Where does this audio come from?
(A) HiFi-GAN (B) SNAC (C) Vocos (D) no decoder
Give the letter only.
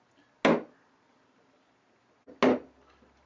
D